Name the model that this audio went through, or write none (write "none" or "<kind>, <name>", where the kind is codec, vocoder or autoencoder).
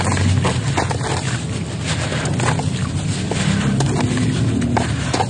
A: none